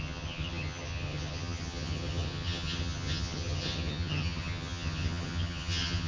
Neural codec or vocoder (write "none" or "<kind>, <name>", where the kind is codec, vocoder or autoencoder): vocoder, HiFi-GAN